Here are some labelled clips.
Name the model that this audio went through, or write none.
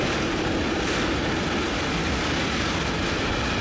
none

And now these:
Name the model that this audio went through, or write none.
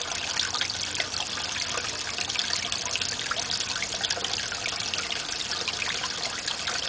none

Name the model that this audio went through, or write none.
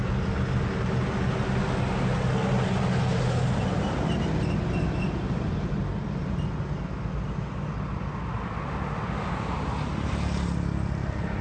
none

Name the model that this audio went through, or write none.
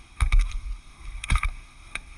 codec, SNAC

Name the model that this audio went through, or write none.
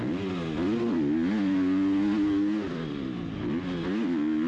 none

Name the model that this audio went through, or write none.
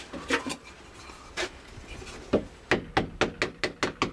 none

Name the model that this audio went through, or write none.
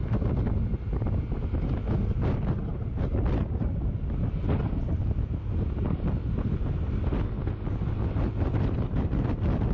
none